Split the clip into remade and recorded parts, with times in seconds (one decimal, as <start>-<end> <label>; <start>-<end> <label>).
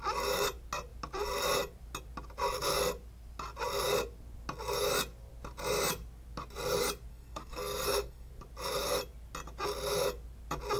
0.0-7.1 recorded; 7.1-8.3 remade; 8.3-10.8 recorded